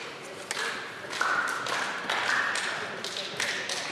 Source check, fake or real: real